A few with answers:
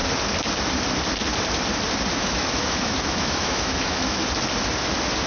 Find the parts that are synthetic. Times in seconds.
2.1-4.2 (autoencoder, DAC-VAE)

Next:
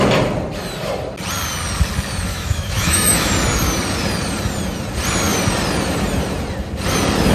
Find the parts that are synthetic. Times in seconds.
2.3-3.3 (autoencoder, DAC-VAE)

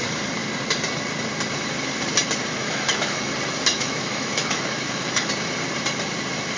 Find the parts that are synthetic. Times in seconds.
2.6-3.3 (autoencoder, DAC-VAE); 3.7-5.3